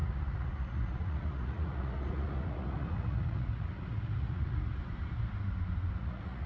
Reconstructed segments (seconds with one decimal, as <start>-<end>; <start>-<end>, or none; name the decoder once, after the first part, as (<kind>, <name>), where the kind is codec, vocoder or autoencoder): 0.0-4.8 (vocoder, Vocos); 6.0-6.5